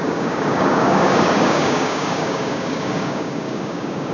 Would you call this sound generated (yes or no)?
yes